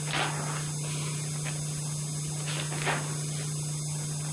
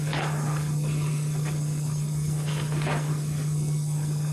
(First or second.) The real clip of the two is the first